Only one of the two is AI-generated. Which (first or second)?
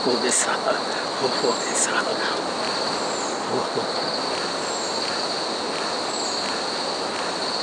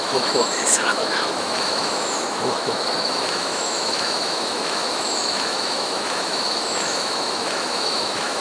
second